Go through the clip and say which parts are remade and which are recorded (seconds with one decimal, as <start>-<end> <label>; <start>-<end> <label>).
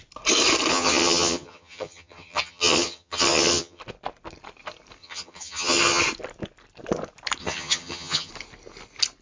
0.0-0.7 recorded; 0.7-3.8 remade; 3.8-5.0 recorded; 5.0-6.0 remade; 6.0-7.4 recorded; 7.4-8.3 remade; 8.3-9.2 recorded